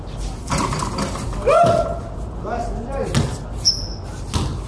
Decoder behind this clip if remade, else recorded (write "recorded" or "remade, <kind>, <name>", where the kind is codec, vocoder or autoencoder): recorded